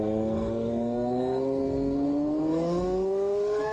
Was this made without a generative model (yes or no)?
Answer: no